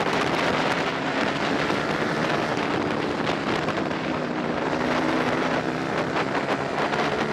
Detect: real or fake fake